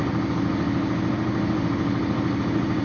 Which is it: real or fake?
real